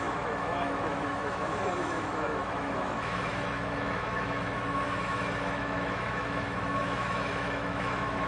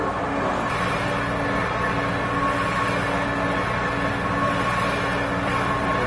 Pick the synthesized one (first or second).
first